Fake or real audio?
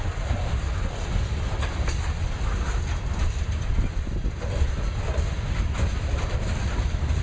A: real